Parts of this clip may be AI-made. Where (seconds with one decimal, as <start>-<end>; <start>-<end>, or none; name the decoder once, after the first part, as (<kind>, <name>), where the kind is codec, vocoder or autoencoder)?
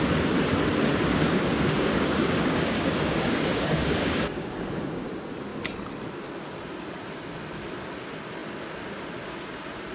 0.9-5.1 (codec, DAC)